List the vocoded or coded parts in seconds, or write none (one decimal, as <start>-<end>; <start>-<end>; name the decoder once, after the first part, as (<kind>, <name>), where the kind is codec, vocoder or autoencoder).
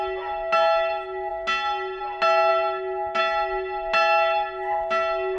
none